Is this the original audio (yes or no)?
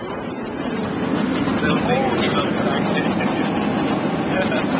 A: yes